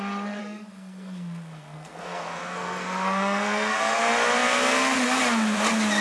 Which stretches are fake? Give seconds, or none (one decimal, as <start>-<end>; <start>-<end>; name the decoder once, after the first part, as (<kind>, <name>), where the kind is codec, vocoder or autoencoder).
0.4-4.0 (codec, SNAC)